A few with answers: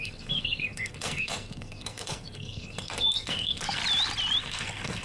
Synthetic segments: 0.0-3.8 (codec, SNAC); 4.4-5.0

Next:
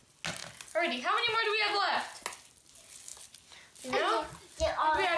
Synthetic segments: none

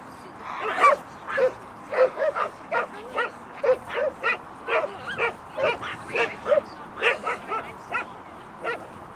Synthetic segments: 1.7-3.6 (codec, DAC); 5.9-6.6